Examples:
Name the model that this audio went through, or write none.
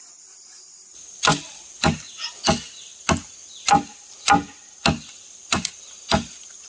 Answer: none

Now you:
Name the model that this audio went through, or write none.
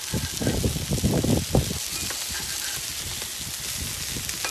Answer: none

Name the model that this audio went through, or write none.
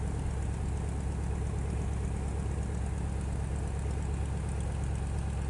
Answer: none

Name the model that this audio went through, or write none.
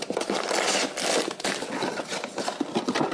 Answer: none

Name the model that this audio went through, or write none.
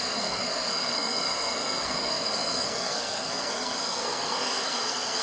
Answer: codec, SNAC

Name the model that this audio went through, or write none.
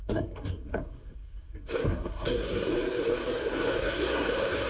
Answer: codec, SNAC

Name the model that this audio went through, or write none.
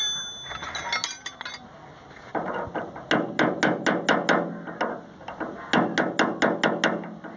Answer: none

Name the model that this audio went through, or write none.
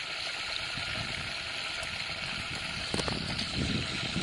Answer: none